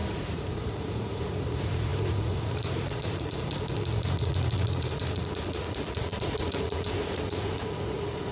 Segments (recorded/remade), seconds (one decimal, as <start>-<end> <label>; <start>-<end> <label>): 0.0-8.3 remade